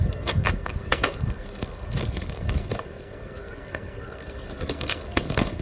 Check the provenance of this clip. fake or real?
fake